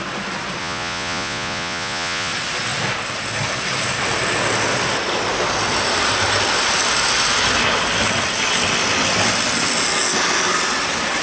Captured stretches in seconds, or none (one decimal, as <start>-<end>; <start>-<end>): 0.0-0.6; 2.3-11.2